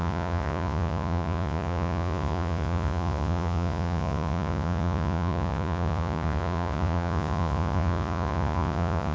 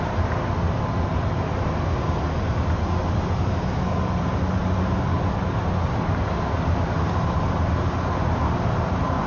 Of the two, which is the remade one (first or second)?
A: first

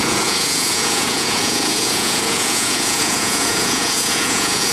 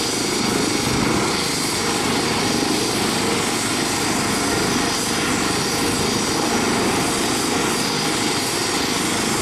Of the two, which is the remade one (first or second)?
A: first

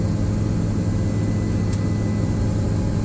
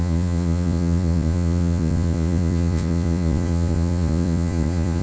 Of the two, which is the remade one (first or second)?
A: second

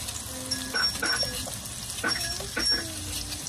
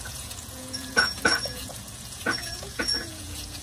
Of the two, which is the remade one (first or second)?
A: second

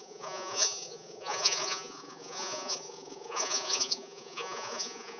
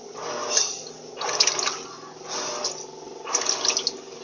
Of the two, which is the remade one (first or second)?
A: first